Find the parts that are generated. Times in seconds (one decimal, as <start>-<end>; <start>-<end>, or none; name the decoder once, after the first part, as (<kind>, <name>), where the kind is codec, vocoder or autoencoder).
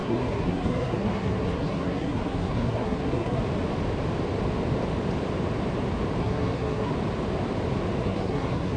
0.0-3.4 (codec, SNAC); 6.2-6.9; 8.0-8.8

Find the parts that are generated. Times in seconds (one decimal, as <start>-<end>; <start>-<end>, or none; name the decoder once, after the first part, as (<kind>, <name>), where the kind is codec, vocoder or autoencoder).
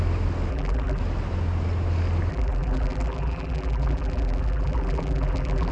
0.5-1.0 (vocoder, BigVGAN v2); 2.3-5.7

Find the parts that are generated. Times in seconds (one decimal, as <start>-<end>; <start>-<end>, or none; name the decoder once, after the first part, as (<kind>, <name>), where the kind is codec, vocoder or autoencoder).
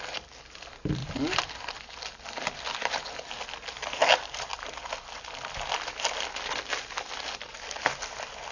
none